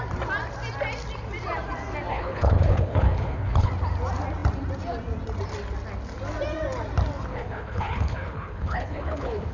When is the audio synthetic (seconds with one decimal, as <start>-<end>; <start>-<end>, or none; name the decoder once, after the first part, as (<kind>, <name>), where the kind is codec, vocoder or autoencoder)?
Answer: 2.1-3.7 (codec, HILCodec); 7.3-9.5

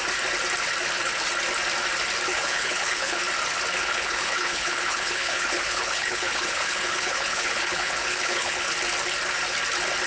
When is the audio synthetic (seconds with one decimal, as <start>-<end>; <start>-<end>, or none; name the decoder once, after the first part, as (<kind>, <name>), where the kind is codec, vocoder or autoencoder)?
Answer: 2.3-3.2 (codec, HILCodec); 3.8-8.7